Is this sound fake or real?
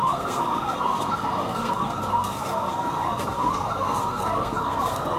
fake